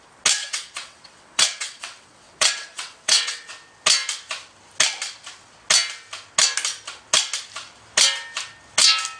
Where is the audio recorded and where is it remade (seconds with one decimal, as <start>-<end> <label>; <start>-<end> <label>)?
0.0-0.4 recorded; 0.4-3.5 remade; 3.5-9.2 recorded